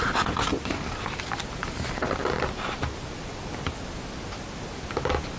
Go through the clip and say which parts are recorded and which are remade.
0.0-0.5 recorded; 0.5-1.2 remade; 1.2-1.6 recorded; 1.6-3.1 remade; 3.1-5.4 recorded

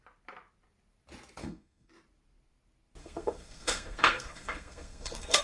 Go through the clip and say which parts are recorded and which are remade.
0.0-1.4 recorded; 1.4-1.9 remade; 1.9-3.0 recorded; 3.0-5.4 remade

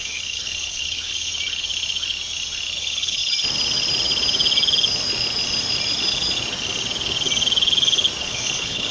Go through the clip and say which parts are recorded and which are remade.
0.0-1.3 remade; 1.3-2.8 recorded; 2.8-3.2 remade; 3.2-8.2 recorded; 8.2-8.9 remade

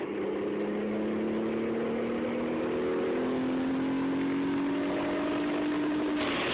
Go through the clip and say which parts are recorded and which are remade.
0.0-6.5 recorded